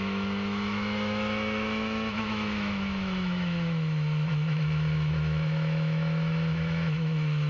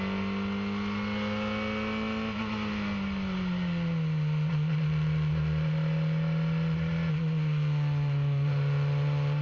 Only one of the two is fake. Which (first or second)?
first